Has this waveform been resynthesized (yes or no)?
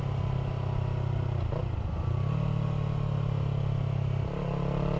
no